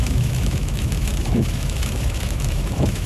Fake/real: fake